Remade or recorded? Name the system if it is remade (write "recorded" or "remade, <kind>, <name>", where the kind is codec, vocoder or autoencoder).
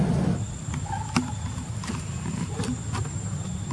recorded